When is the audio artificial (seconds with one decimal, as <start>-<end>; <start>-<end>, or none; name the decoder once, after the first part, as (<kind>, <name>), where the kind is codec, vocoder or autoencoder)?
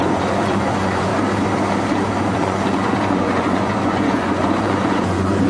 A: 0.0-1.1 (vocoder, Vocos); 2.3-5.5